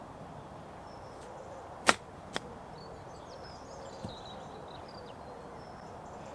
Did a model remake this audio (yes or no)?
no